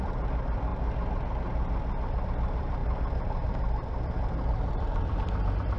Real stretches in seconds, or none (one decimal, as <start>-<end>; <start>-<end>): 0.7-2.2